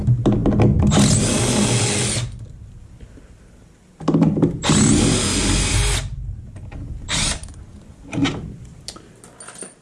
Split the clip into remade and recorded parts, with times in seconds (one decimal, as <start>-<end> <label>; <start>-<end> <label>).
0.0-5.4 recorded; 5.4-6.6 remade; 6.6-9.8 recorded

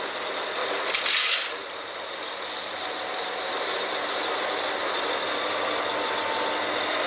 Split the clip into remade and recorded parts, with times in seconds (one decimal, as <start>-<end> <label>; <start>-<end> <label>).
0.0-0.6 recorded; 0.6-1.1 remade; 1.1-1.6 recorded; 1.6-5.6 remade; 5.6-7.1 recorded